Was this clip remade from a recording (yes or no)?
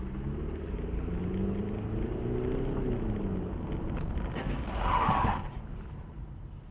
no